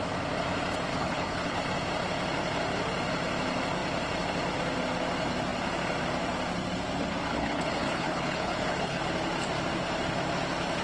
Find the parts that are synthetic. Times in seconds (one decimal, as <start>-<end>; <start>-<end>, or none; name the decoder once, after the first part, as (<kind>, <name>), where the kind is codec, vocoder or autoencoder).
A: 0.9-1.6 (codec, HILCodec); 7.3-9.0